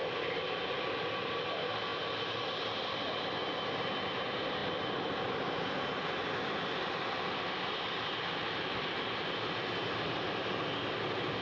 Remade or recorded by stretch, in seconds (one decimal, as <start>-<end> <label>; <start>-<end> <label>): 0.0-11.4 recorded